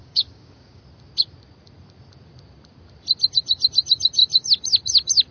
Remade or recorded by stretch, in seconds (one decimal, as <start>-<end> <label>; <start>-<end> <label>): 0.0-0.8 remade; 0.8-5.3 recorded